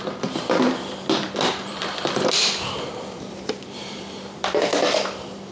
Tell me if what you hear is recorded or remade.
remade